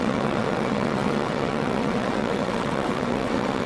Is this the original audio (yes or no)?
no